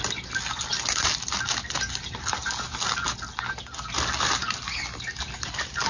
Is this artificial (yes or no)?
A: no